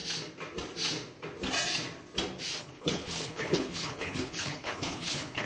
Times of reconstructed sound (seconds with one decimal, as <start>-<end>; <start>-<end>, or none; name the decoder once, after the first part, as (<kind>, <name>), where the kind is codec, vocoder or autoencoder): 2.6-5.5 (codec, HILCodec)